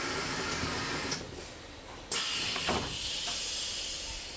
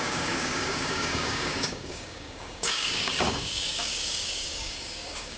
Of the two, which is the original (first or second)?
first